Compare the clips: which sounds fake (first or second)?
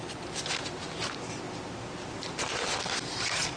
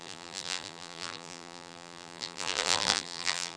second